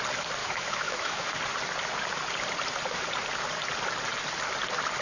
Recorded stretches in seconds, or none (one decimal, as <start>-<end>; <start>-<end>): 0.0-0.4; 1.4-5.0